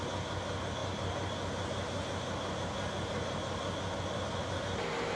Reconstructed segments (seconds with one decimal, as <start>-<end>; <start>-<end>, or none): none